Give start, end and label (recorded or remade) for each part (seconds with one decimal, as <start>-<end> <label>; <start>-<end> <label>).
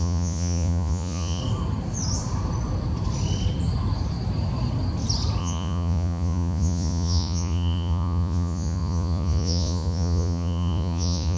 0.0-1.4 remade; 1.4-5.4 recorded; 5.4-11.4 remade